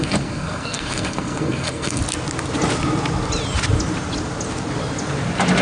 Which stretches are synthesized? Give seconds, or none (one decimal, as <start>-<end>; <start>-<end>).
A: 0.0-2.0